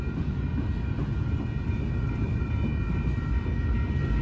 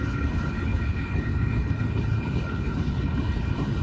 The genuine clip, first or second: first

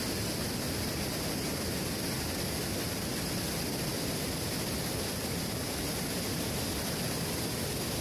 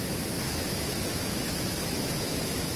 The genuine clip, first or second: first